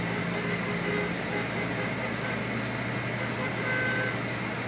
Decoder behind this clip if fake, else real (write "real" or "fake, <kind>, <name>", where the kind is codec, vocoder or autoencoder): real